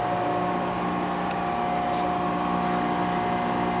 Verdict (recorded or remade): recorded